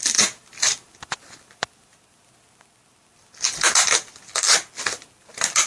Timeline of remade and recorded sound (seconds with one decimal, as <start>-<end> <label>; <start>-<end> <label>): 0.0-5.7 recorded